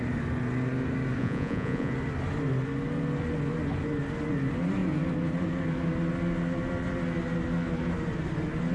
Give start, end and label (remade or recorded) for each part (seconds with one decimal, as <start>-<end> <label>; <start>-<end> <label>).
0.0-1.2 recorded; 1.2-1.9 remade; 1.9-8.7 recorded

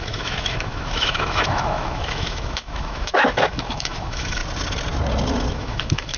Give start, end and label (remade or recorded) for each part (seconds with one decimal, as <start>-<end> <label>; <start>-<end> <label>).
0.0-4.4 remade; 4.4-5.5 recorded; 5.5-6.2 remade